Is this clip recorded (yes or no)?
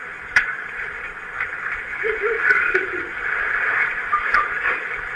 no